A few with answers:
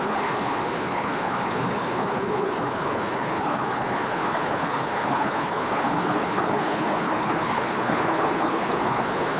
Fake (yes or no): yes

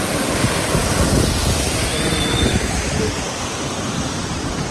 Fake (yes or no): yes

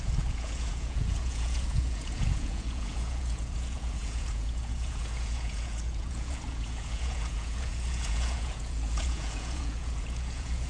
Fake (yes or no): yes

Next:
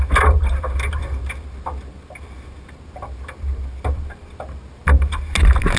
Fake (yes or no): no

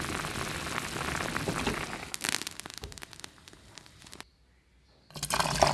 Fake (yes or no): no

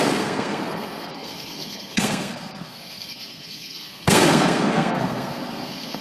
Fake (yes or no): yes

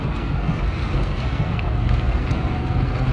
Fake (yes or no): yes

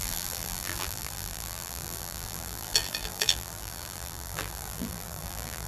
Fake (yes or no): yes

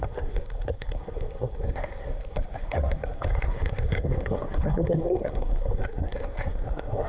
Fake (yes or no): yes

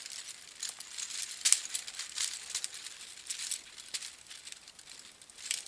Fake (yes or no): no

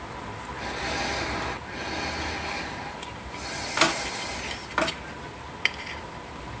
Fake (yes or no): no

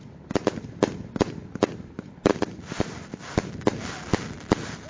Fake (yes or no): no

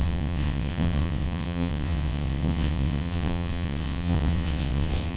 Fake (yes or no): yes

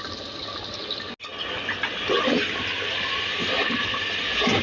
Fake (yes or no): no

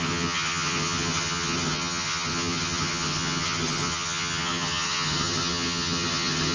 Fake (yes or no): yes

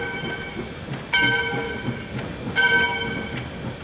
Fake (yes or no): no